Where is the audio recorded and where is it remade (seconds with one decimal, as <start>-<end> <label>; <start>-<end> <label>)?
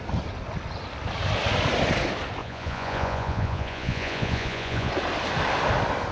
0.0-2.4 recorded; 2.4-4.9 remade; 4.9-6.1 recorded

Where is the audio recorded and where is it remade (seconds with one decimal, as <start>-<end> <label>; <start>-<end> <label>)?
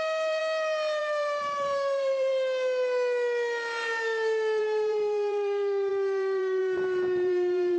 0.0-0.4 remade; 0.4-1.0 recorded; 1.0-2.3 remade; 2.3-4.6 recorded; 4.6-7.8 remade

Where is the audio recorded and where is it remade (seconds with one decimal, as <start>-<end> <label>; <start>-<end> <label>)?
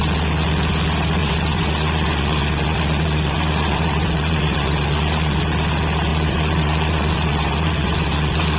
0.0-1.2 recorded; 1.2-5.4 remade; 5.4-6.1 recorded; 6.1-8.6 remade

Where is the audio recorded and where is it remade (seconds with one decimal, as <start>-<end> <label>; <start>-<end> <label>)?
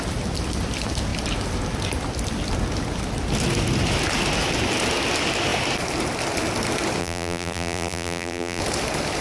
0.0-7.0 recorded; 7.0-8.6 remade; 8.6-9.2 recorded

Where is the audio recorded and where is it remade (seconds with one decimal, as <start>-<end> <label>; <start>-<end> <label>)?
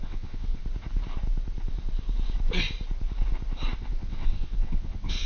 0.0-0.6 remade; 0.6-3.8 recorded; 3.8-5.3 remade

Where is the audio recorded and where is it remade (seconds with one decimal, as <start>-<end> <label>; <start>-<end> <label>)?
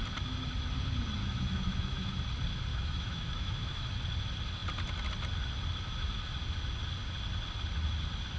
0.0-1.2 recorded; 1.2-2.1 remade; 2.1-2.7 recorded; 2.7-3.9 remade; 3.9-8.4 recorded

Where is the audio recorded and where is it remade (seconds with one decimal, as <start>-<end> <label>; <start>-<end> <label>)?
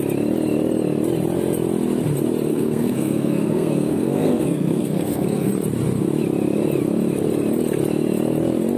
0.0-2.5 recorded; 2.5-5.5 remade; 5.5-8.8 recorded